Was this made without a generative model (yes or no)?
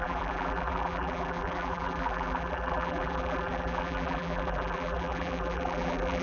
no